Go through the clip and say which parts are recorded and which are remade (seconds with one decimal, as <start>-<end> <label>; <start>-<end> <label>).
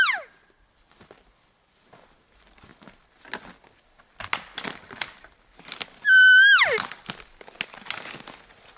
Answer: 0.0-8.8 recorded